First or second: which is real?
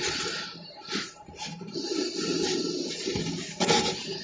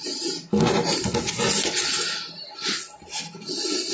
second